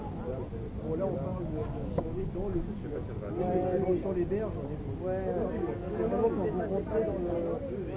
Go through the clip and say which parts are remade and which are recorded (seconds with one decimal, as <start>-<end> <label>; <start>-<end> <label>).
0.0-1.3 recorded; 1.3-3.3 remade; 3.3-5.6 recorded; 5.6-6.7 remade; 6.7-8.0 recorded